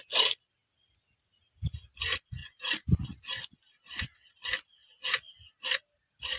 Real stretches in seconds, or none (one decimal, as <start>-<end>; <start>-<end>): 0.0-6.4